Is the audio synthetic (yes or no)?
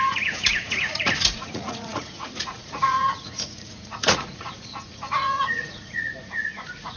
yes